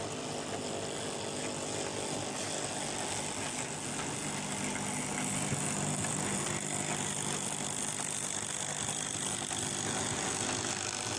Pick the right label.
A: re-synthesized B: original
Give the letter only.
B